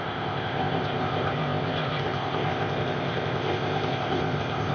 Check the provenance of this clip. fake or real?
fake